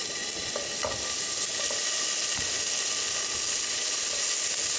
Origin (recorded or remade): recorded